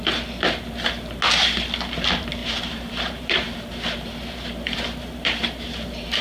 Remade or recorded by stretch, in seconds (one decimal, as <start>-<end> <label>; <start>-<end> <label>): 0.0-2.4 recorded; 2.4-6.2 remade